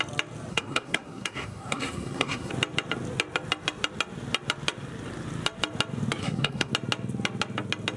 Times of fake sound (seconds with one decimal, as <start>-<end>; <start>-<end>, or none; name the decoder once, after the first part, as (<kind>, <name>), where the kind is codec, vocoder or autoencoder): 0.5-2.5 (codec, SNAC); 6.2-6.7